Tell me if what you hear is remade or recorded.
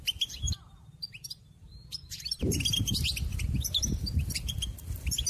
remade